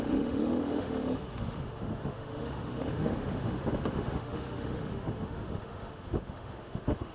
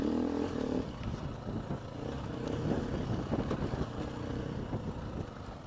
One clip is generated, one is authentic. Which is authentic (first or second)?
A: second